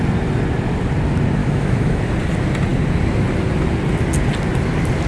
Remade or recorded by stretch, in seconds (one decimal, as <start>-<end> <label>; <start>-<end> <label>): 0.0-1.4 recorded; 1.4-2.0 remade; 2.0-5.1 recorded